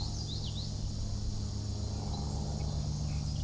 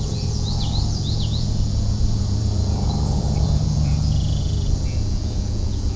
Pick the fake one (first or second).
second